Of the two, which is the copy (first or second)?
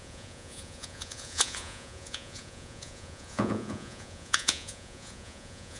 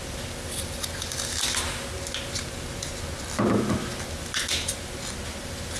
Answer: first